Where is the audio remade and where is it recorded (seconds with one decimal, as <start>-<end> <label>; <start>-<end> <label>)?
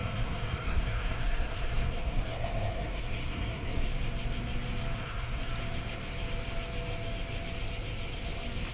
0.0-3.9 remade; 3.9-5.0 recorded; 5.0-5.5 remade; 5.5-8.7 recorded